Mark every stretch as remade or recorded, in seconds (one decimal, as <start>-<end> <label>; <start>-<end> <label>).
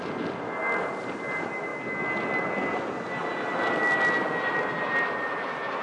0.0-5.8 recorded